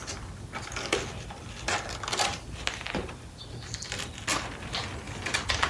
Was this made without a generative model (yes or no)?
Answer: yes